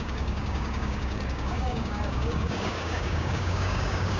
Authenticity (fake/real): fake